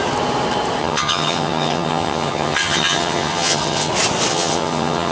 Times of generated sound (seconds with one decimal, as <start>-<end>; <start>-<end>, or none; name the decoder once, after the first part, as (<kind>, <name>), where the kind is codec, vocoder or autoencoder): 0.8-3.9 (vocoder, HiFi-GAN); 4.3-5.1